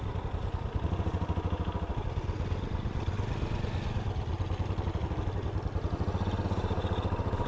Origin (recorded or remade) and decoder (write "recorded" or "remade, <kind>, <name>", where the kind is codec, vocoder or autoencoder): recorded